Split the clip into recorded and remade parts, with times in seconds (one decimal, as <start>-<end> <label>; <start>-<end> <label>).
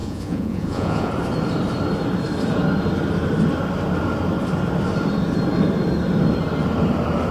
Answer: 0.0-1.1 remade; 1.1-7.3 recorded